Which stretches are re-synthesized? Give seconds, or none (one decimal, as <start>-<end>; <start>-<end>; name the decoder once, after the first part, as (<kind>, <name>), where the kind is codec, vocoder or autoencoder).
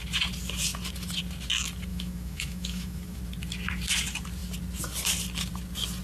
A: 1.9-3.2 (autoencoder, DAC-VAE)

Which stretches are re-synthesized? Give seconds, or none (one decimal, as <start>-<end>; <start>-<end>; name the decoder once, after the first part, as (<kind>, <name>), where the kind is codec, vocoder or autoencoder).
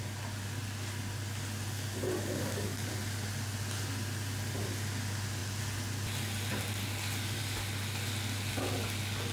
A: 2.4-2.9 (codec, DAC)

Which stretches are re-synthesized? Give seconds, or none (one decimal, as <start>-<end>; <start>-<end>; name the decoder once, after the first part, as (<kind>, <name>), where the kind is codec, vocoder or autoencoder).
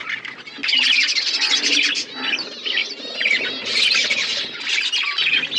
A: 2.8-3.4 (vocoder, BigVGAN v2)